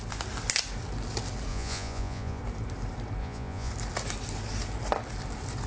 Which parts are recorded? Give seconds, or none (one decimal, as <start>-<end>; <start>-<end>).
0.0-1.5; 2.4-3.2; 3.7-5.7